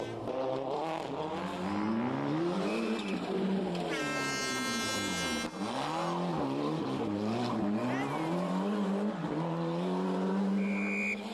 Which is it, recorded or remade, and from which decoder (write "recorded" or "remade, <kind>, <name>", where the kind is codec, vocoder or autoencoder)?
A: recorded